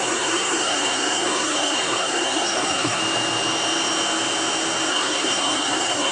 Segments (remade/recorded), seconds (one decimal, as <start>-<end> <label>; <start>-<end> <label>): 0.0-3.0 remade; 3.0-4.9 recorded; 4.9-6.1 remade